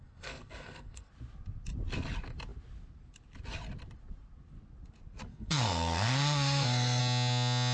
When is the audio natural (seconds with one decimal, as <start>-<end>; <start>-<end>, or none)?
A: 1.1-5.3; 7.0-7.7